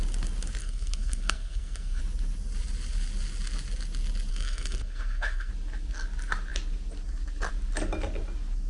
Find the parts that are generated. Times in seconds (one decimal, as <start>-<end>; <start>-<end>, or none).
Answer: 0.6-2.0; 4.3-5.5